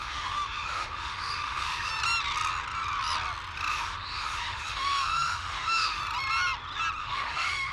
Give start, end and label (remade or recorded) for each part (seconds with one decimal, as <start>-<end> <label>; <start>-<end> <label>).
0.0-1.9 remade; 1.9-3.7 recorded; 3.7-6.0 remade; 6.0-7.0 recorded; 7.0-7.7 remade